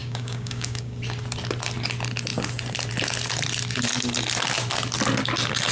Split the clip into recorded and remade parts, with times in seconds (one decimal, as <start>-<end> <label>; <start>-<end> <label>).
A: 0.0-1.0 remade; 1.0-5.7 recorded